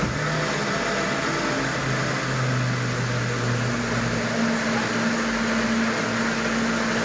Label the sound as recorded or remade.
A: recorded